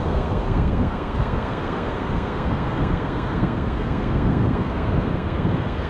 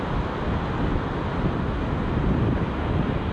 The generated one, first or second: first